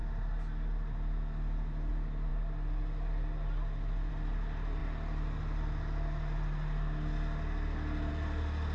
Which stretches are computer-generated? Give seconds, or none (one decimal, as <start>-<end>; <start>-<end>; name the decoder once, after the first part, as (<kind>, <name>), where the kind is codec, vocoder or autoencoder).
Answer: none